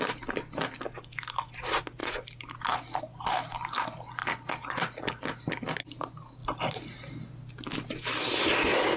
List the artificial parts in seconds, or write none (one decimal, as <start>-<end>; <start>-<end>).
4.2-5.5